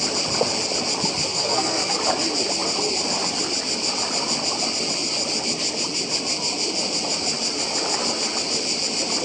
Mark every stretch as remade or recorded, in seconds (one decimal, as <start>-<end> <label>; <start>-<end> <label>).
0.0-1.3 recorded; 1.3-1.9 remade; 1.9-9.2 recorded